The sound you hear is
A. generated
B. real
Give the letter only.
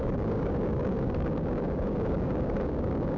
A